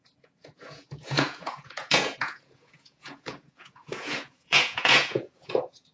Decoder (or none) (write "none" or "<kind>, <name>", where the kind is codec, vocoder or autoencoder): vocoder, Vocos